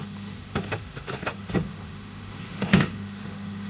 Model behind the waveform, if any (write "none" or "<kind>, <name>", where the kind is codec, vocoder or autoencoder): autoencoder, DAC-VAE